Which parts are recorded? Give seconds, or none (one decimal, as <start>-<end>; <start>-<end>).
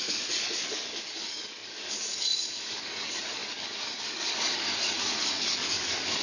none